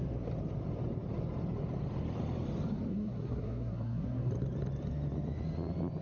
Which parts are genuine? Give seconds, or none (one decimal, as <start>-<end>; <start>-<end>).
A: 0.0-2.9; 4.3-6.0